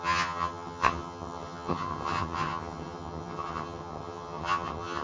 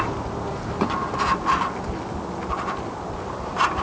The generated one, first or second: first